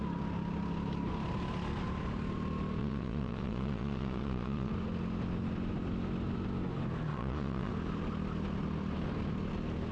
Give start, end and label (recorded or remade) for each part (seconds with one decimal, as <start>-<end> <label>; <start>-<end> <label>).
0.0-2.8 recorded; 2.8-4.7 remade; 4.7-7.1 recorded; 7.1-7.7 remade; 7.7-9.9 recorded